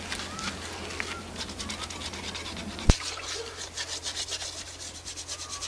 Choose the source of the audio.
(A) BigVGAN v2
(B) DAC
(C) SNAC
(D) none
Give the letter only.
D